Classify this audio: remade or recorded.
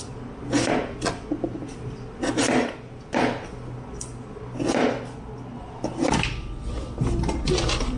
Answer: recorded